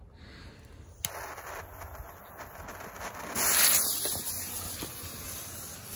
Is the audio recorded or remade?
recorded